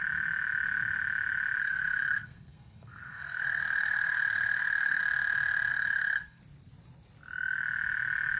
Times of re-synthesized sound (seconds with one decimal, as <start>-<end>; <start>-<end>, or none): 1.6-5.0; 5.7-6.4